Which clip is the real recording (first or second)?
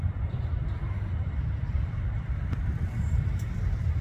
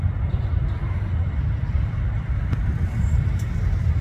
second